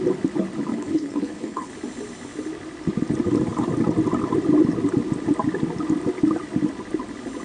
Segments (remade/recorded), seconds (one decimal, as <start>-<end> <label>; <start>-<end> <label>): 0.0-0.7 recorded; 0.7-1.7 remade; 1.7-7.4 recorded